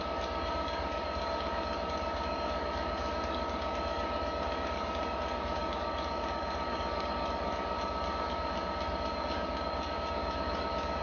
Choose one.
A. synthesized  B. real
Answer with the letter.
A